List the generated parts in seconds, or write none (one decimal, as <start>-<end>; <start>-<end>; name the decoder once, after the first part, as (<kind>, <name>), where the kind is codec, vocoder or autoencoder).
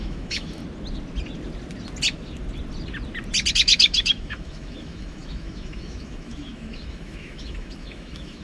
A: 0.0-0.6 (autoencoder, DAC-VAE); 3.5-8.4